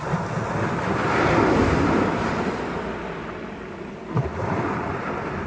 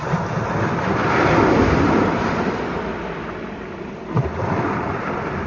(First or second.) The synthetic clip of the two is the second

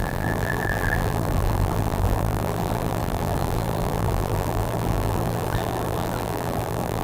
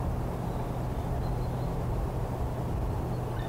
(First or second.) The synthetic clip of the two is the first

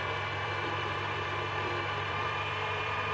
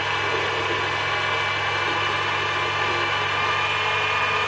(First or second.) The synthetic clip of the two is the first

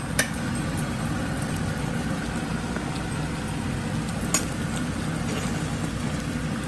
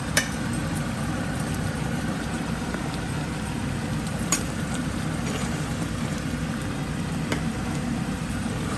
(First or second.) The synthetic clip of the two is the second